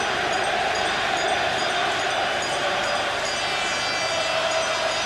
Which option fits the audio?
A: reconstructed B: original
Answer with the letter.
B